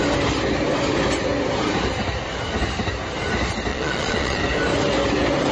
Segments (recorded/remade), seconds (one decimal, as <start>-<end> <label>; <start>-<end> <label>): 0.0-3.7 recorded; 3.7-4.4 remade; 4.4-5.5 recorded